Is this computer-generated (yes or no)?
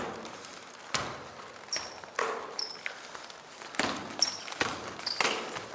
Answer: no